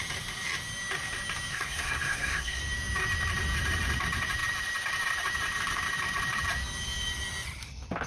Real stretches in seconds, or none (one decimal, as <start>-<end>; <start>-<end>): 0.0-1.5; 2.6-8.1